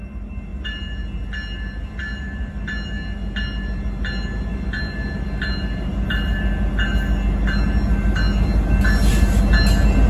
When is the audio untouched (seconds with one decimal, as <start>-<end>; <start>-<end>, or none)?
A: 0.0-10.1